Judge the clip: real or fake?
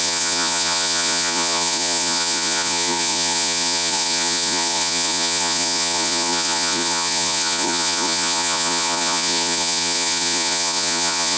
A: fake